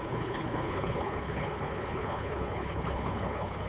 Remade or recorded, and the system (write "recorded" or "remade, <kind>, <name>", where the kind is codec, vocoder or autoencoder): remade, codec, HILCodec